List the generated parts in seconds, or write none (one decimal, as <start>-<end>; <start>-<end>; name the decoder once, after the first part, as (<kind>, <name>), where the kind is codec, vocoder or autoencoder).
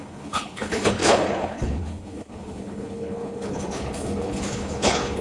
0.0-5.2 (codec, HILCodec)